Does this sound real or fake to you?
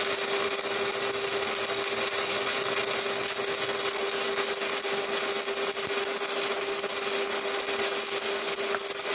real